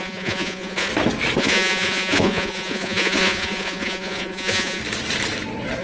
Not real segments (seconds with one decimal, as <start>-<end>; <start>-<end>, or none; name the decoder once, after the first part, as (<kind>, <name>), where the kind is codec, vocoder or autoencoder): 0.0-0.9 (vocoder, Vocos); 1.4-4.8